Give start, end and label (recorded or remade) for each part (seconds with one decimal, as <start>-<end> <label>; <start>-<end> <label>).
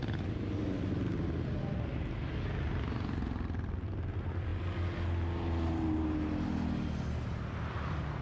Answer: 0.0-8.2 recorded